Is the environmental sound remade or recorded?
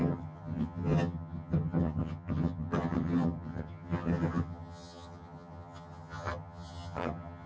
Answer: remade